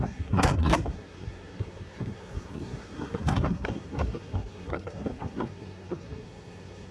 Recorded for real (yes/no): no